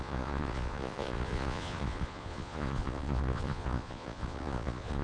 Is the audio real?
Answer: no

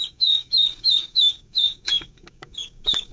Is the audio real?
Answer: no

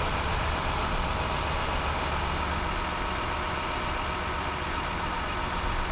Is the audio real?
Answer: yes